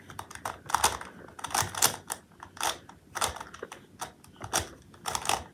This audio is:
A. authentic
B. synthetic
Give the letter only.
A